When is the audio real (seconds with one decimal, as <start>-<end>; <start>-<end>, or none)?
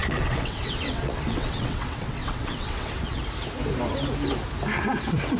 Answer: 3.2-5.4